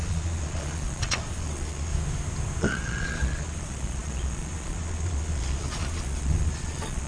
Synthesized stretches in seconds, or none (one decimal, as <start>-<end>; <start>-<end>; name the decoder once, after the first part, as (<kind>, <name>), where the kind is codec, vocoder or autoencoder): 0.0-1.9 (vocoder, Vocos); 2.6-7.1